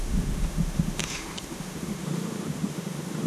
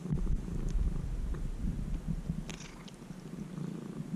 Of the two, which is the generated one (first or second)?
first